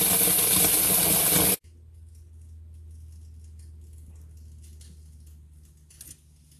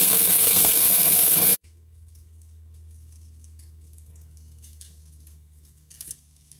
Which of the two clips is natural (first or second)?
first